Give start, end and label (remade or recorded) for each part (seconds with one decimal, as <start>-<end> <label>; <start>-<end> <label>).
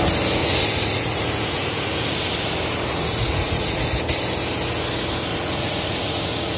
0.0-0.4 recorded; 0.4-2.5 remade; 2.5-2.9 recorded; 2.9-3.8 remade; 3.8-5.3 recorded; 5.3-6.6 remade